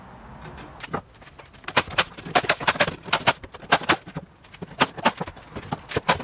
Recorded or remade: recorded